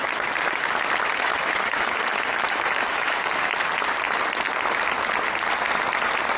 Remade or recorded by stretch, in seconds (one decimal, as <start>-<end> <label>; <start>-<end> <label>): 0.0-1.1 recorded; 1.1-3.3 remade; 3.3-6.4 recorded